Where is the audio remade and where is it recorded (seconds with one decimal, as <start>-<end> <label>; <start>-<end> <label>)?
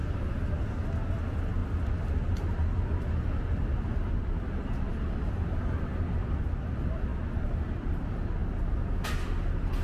0.0-1.6 recorded; 1.6-2.8 remade; 2.8-9.8 recorded